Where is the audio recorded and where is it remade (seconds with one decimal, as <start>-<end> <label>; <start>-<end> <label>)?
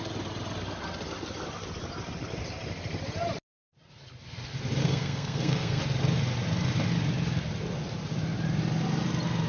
0.0-4.8 recorded; 4.8-5.8 remade; 5.8-9.5 recorded